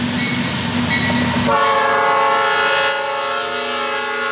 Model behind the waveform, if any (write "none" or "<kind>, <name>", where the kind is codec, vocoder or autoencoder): none